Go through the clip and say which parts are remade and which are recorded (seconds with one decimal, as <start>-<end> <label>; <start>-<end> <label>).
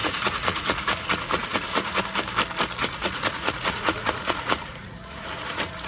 0.0-2.0 remade; 2.0-2.8 recorded; 2.8-5.9 remade